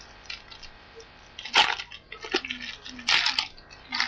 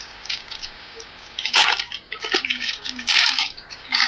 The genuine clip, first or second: first